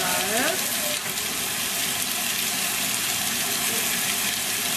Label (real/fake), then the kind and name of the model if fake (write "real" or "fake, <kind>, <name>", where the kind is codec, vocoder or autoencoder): real